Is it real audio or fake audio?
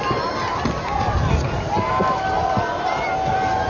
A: real